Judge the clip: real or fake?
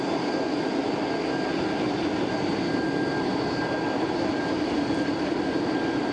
real